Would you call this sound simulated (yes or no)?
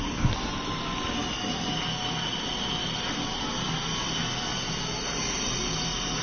no